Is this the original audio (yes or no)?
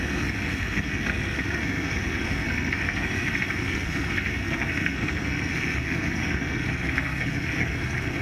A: no